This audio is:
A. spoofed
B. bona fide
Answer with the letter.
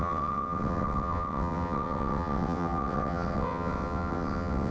A